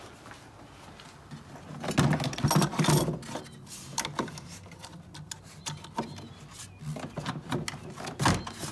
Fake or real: real